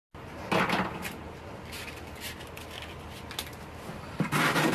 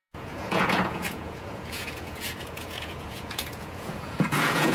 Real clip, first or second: first